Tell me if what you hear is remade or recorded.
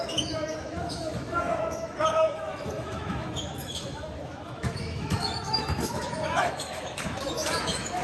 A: remade